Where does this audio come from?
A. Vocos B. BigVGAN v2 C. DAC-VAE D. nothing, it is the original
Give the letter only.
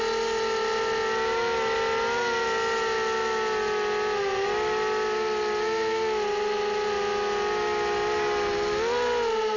D